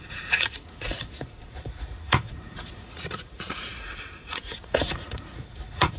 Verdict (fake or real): fake